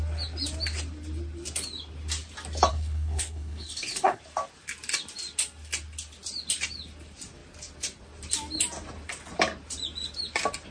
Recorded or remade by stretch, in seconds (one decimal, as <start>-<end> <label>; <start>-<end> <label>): 0.0-2.7 recorded; 2.7-4.2 remade; 4.2-10.7 recorded